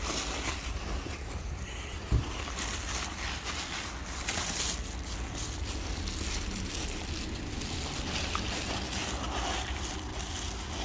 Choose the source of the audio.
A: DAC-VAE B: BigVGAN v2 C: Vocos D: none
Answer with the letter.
D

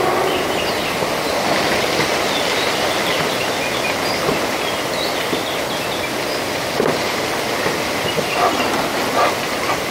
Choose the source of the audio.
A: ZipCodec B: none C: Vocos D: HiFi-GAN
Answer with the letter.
B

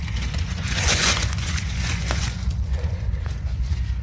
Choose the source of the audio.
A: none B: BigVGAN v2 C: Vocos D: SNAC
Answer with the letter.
C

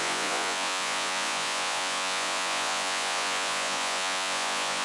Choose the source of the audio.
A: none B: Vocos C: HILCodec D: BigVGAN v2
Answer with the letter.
B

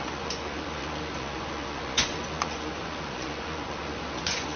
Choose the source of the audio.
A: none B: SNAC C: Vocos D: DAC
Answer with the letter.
C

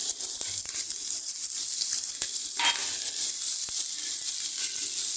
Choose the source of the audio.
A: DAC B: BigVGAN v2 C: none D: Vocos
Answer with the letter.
C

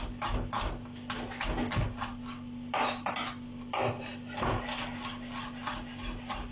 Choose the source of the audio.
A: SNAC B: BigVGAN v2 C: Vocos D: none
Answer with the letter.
D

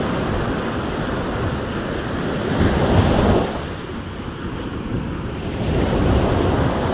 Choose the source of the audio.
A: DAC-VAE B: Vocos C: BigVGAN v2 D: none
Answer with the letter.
D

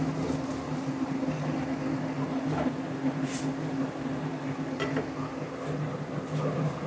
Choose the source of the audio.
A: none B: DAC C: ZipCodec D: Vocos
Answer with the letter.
A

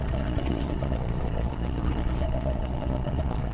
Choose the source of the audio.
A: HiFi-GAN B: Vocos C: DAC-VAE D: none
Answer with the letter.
B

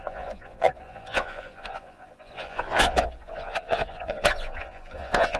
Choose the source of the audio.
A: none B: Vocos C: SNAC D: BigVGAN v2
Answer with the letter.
B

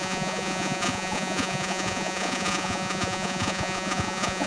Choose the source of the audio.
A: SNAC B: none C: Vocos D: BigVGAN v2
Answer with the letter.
C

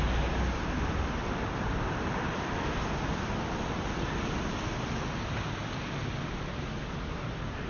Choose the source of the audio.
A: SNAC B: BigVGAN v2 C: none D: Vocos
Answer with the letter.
C